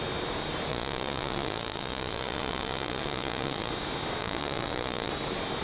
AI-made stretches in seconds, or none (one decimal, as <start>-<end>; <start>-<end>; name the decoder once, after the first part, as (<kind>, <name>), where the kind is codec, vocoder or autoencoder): 0.7-3.7 (vocoder, Vocos); 4.2-5.1